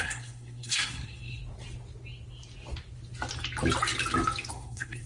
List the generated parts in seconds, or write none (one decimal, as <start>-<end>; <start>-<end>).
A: 0.0-1.4; 4.5-5.1